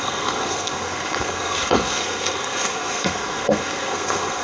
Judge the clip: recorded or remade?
remade